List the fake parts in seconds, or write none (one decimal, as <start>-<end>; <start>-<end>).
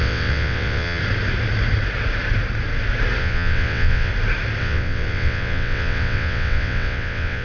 0.0-1.0; 3.2-4.1; 4.6-7.4